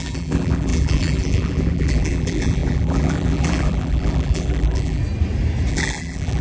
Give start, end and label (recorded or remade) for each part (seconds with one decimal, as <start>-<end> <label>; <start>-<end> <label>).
0.0-5.0 remade; 5.0-5.7 recorded; 5.7-6.4 remade